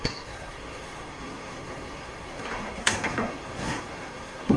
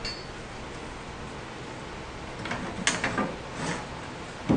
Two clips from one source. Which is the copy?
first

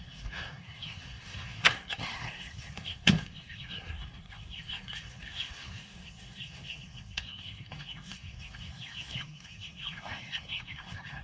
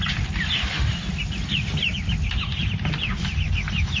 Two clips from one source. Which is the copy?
first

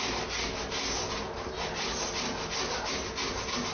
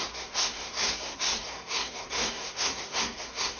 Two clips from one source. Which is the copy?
second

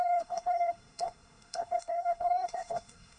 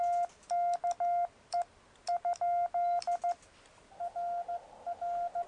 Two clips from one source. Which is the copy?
first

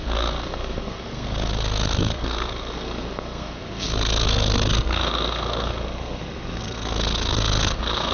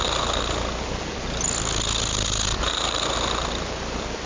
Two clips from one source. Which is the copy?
first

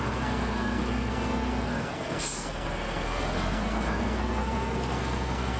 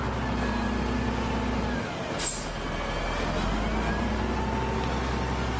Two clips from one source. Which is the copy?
first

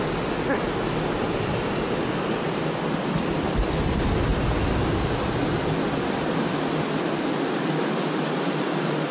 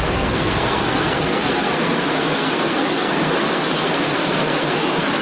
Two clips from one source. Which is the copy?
second